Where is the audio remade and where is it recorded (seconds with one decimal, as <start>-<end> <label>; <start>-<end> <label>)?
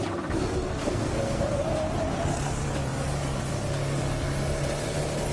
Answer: 0.0-0.8 recorded; 0.8-1.5 remade; 1.5-5.3 recorded